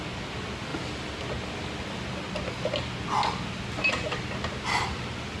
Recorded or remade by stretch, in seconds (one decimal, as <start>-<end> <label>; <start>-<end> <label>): 0.0-5.4 recorded